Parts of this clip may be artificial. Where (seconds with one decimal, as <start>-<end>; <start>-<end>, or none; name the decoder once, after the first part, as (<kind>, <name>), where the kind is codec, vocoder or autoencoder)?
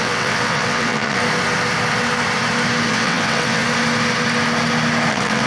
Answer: 0.0-1.2 (vocoder, WaveNeXt); 2.9-3.6; 5.1-5.5